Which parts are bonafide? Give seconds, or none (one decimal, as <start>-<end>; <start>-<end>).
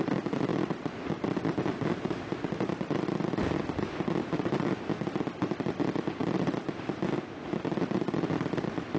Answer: 0.0-9.0